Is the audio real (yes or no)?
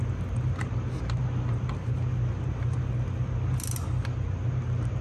yes